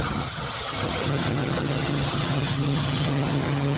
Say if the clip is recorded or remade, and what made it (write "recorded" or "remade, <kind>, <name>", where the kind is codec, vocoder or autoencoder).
remade, vocoder, HiFi-GAN